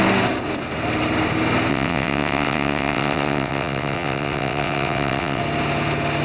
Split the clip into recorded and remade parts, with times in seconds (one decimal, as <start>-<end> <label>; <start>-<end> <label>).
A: 0.0-1.7 recorded; 1.7-5.4 remade; 5.4-6.2 recorded